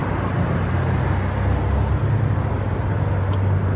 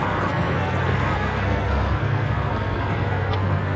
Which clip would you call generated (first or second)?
second